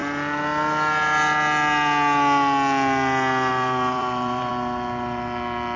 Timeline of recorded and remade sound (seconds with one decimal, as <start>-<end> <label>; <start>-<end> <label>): 0.0-3.5 recorded; 3.5-4.5 remade; 4.5-5.8 recorded